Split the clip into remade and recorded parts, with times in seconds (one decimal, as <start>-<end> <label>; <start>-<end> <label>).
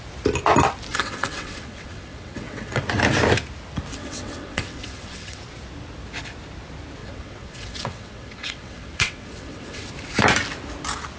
0.0-0.9 recorded; 0.9-2.8 remade; 2.8-3.9 recorded; 3.9-5.4 remade; 5.4-7.0 recorded; 7.0-9.9 remade; 9.9-11.2 recorded